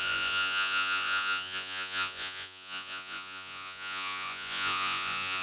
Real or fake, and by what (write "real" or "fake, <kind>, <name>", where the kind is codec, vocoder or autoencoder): fake, vocoder, Vocos